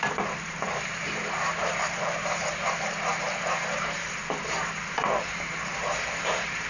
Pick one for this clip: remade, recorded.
remade